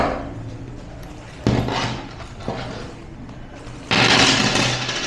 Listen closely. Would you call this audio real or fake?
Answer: real